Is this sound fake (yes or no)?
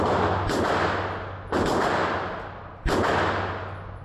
no